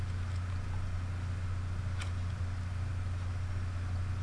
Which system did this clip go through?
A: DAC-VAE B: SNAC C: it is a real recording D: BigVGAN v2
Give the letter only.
C